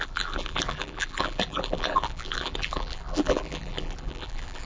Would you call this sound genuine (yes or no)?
no